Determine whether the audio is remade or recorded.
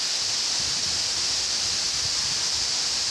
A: recorded